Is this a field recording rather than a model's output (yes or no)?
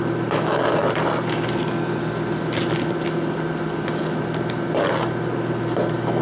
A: yes